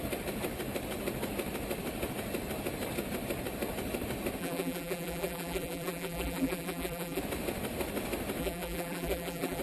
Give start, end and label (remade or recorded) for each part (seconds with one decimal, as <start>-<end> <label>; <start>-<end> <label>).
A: 0.0-4.4 recorded; 4.4-7.2 remade; 7.2-8.4 recorded; 8.4-9.6 remade